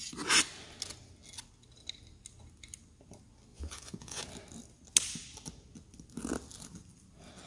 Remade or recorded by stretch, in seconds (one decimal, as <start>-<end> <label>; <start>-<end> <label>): 0.0-3.5 recorded; 3.5-4.2 remade; 4.2-7.5 recorded